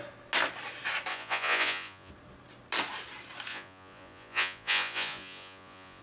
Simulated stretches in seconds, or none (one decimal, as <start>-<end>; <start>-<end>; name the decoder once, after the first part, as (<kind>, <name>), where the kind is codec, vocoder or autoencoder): 1.1-2.1 (vocoder, Vocos); 3.5-6.0